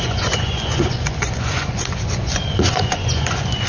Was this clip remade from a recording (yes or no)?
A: yes